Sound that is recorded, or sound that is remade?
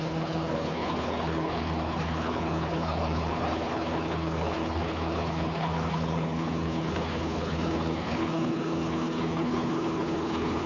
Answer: remade